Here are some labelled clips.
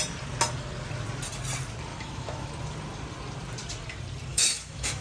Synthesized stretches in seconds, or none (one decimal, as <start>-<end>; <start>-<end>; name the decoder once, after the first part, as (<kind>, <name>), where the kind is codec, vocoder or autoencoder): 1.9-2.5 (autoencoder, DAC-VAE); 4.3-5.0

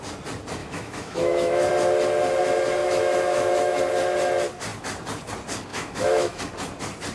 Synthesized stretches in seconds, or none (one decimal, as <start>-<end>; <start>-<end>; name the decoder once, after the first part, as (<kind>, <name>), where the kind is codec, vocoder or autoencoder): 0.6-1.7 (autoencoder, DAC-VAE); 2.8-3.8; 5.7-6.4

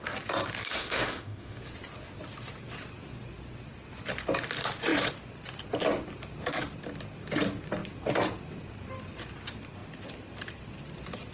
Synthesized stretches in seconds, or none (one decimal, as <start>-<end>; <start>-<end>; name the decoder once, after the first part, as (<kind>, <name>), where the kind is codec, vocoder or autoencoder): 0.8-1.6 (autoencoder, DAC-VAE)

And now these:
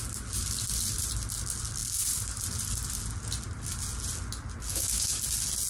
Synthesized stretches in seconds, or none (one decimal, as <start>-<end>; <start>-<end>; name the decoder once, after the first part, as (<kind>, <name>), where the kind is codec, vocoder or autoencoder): 4.7-5.2 (autoencoder, DAC-VAE)

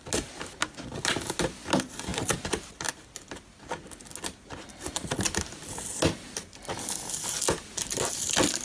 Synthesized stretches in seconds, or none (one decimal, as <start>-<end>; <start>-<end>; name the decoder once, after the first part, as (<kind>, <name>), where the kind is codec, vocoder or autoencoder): none

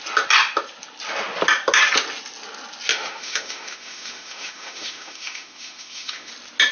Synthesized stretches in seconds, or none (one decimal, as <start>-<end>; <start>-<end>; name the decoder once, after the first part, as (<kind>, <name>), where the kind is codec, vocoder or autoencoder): 2.9-6.3 (autoencoder, DAC-VAE)